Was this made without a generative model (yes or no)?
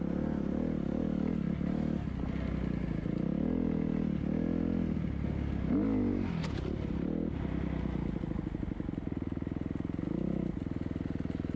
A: yes